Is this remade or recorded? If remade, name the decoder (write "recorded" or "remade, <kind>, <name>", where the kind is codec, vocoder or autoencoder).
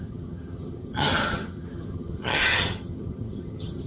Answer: remade, vocoder, HiFi-GAN